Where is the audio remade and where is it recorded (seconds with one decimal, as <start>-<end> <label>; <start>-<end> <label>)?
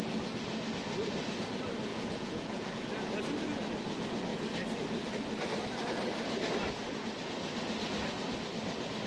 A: 0.0-1.9 recorded; 1.9-2.9 remade; 2.9-9.1 recorded